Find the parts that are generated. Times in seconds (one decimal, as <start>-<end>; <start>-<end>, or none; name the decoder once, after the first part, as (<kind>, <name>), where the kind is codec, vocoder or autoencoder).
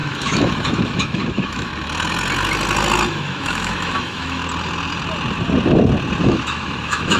0.0-1.7 (autoencoder, DAC-VAE); 3.1-4.4; 6.2-7.2